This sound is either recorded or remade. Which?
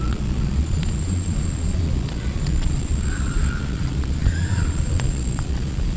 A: remade